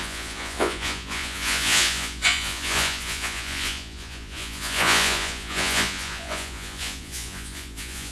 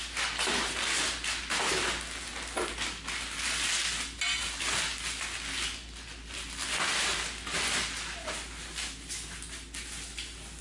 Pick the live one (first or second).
second